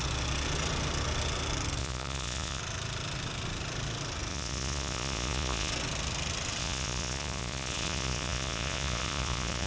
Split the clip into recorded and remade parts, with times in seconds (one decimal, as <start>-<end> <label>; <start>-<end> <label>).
0.0-1.8 recorded; 1.8-2.6 remade; 2.6-4.3 recorded; 4.3-5.7 remade; 5.7-6.6 recorded; 6.6-9.7 remade